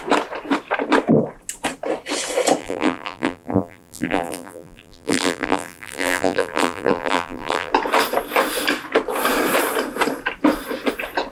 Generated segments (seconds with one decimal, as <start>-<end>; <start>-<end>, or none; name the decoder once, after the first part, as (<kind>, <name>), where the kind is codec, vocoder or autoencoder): 2.6-7.7 (vocoder, BigVGAN v2)